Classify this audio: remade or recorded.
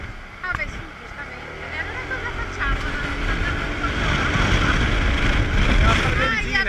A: recorded